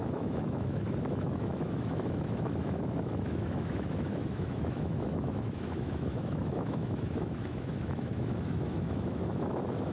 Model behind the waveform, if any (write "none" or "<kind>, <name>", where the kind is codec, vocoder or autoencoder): autoencoder, DAC-VAE